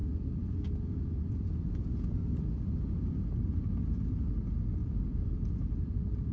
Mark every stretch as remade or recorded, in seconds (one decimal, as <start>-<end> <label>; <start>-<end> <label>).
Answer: 0.0-3.2 remade; 3.2-4.8 recorded; 4.8-5.7 remade; 5.7-6.3 recorded